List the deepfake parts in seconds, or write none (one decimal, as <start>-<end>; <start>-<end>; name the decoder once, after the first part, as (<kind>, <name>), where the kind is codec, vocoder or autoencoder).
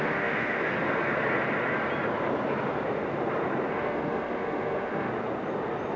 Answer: 0.0-0.6 (autoencoder, DAC-VAE); 3.7-5.1